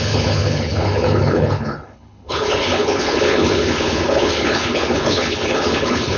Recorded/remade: remade